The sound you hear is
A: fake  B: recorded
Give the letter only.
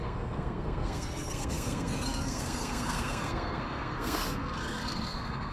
A